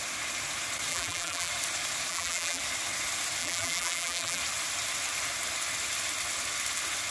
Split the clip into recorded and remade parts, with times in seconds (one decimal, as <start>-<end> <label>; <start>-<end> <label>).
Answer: 0.0-0.9 recorded; 0.9-1.5 remade; 1.5-2.1 recorded; 2.1-2.6 remade; 2.6-3.4 recorded; 3.4-4.4 remade; 4.4-7.1 recorded